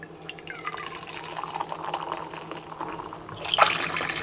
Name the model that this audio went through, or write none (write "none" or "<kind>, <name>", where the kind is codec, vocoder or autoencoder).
none